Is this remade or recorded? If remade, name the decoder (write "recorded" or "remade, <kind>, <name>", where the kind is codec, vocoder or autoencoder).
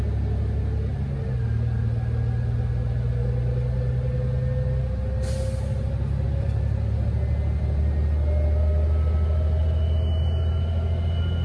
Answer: recorded